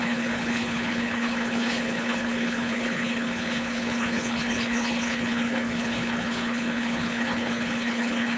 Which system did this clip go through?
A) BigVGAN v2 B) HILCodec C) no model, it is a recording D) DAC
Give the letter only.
B